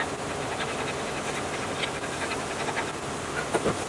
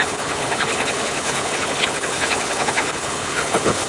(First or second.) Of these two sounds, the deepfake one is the second